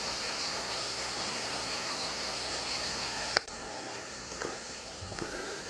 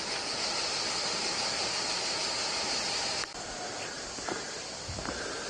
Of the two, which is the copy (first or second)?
first